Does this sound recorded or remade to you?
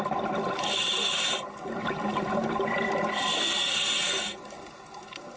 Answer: recorded